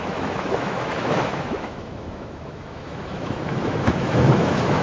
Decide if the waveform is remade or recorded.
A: remade